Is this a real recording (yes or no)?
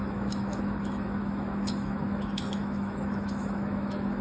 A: no